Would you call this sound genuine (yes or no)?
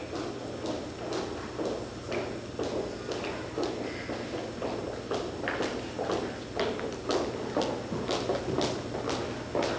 yes